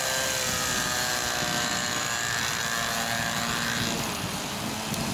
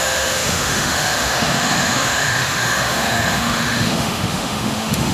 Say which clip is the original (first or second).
first